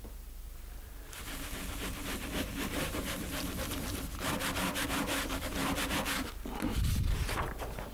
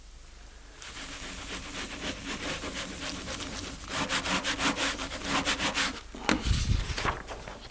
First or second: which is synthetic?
first